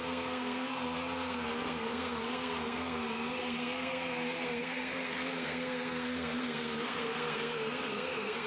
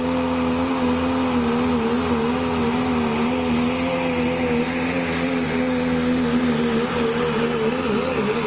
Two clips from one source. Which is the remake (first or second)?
first